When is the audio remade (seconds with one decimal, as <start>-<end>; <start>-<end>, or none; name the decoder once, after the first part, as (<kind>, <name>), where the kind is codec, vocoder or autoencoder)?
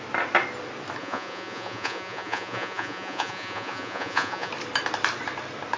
1.0-4.5 (vocoder, Vocos)